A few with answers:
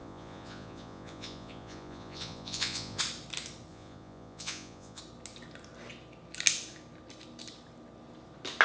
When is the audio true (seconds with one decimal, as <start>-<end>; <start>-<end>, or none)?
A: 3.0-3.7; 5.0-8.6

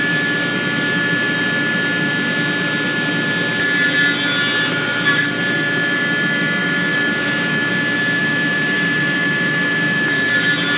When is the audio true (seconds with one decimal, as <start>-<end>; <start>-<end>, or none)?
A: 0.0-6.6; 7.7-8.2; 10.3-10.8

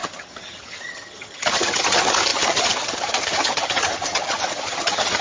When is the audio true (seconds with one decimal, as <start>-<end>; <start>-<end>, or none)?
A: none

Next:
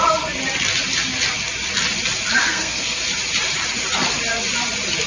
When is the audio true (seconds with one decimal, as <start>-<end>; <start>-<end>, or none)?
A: 0.0-2.4; 3.0-5.1

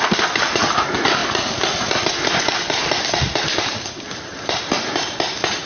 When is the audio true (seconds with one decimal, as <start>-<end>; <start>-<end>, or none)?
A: 0.0-5.7

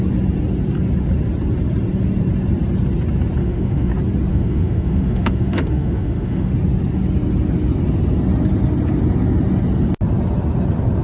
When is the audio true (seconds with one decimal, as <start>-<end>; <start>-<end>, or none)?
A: 0.0-3.4; 3.9-4.3; 6.5-11.0

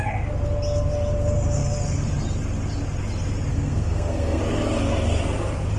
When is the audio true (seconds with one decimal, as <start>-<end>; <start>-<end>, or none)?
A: 0.0-3.5; 4.4-5.8

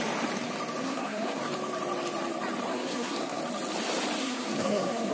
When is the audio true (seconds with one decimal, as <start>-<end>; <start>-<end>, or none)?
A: 0.0-0.8; 1.4-2.7; 3.4-4.2